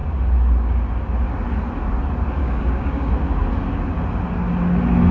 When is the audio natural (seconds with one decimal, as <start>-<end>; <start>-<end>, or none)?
0.0-2.4; 3.1-5.1